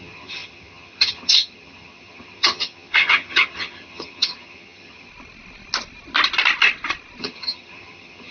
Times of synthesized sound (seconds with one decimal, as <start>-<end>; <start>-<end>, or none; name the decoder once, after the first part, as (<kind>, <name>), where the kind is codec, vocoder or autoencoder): 0.0-5.1 (vocoder, HiFi-GAN); 7.2-8.3